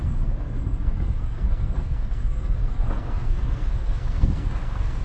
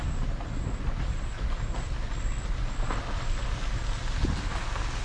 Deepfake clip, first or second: first